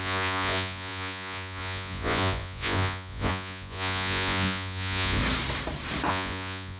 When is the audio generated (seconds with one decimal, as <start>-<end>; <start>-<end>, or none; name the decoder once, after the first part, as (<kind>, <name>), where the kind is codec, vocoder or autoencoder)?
0.0-5.2 (vocoder, Vocos); 6.1-6.8